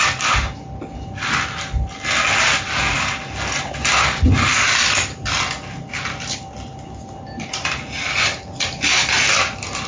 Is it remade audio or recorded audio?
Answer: recorded